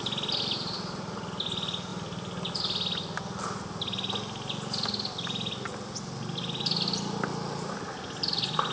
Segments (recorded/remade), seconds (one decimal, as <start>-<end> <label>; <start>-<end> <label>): 0.0-8.7 recorded